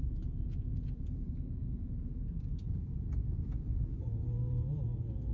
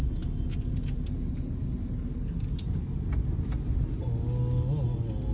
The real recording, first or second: second